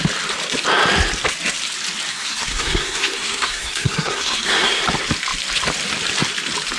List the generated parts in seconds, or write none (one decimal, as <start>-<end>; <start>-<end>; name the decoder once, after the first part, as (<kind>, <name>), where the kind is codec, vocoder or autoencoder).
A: 2.1-4.8 (codec, SNAC)